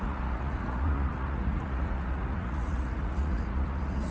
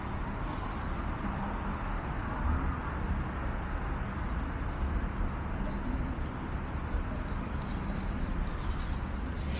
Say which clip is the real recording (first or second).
second